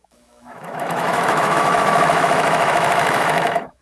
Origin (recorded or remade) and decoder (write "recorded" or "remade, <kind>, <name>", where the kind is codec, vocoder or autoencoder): remade, autoencoder, DAC-VAE